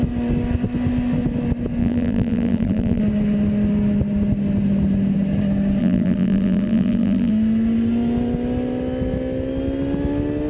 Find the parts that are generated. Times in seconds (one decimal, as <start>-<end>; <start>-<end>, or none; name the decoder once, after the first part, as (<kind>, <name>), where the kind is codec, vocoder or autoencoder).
1.8-3.0 (vocoder, BigVGAN v2); 5.8-7.3